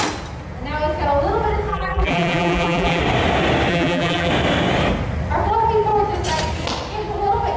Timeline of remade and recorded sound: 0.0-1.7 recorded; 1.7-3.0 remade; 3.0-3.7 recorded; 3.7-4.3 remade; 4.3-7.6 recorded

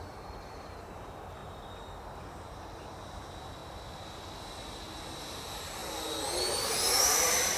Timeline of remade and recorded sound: 0.0-3.6 remade; 3.6-5.2 recorded; 5.2-5.8 remade; 5.8-7.0 recorded; 7.0-7.6 remade

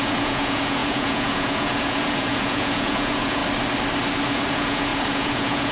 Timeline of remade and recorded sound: 0.0-3.4 remade; 3.4-4.5 recorded; 4.5-5.7 remade

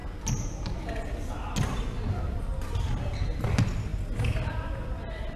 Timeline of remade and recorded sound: 0.0-5.4 recorded

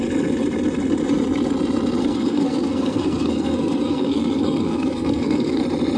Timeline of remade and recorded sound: 0.0-2.0 recorded; 2.0-5.6 remade; 5.6-6.0 recorded

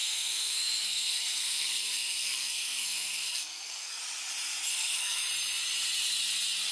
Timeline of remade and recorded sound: 0.0-4.0 remade; 4.0-4.7 recorded; 4.7-5.2 remade; 5.2-6.7 recorded